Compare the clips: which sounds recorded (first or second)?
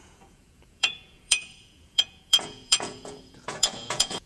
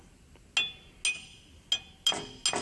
second